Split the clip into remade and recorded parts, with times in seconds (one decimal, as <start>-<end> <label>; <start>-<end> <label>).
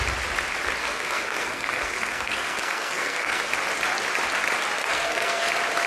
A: 0.0-0.8 recorded; 0.8-3.5 remade; 3.5-4.8 recorded; 4.8-5.5 remade; 5.5-5.9 recorded